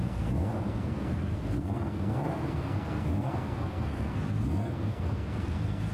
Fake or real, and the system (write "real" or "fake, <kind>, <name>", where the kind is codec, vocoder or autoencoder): fake, codec, SNAC